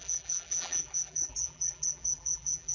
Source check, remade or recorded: remade